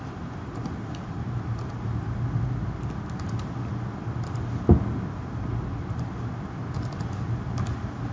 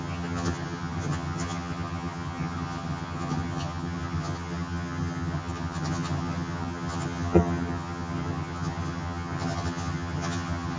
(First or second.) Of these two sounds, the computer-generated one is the second